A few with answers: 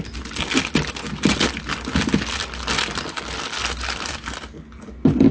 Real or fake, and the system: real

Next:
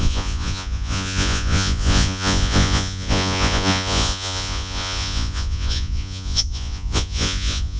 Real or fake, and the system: fake, vocoder, Vocos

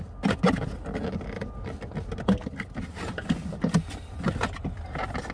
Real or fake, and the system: real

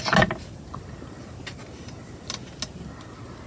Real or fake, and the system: real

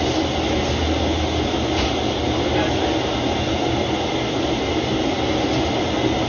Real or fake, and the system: real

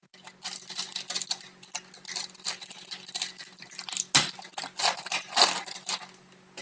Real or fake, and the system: real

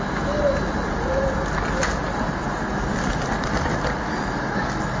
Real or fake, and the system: real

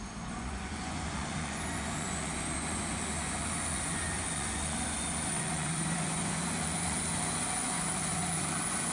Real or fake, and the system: fake, vocoder, Vocos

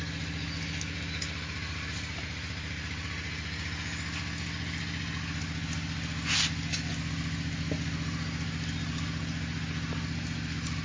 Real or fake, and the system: real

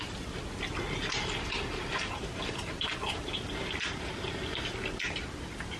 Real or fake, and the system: real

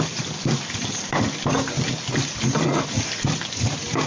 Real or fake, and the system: real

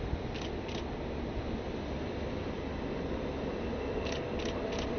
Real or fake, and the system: real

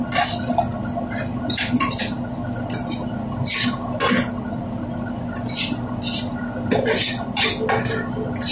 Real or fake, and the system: real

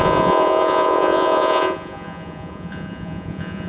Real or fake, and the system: fake, vocoder, Vocos